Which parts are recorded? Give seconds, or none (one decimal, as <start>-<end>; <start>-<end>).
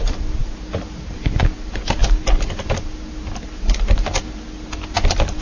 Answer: 0.0-5.4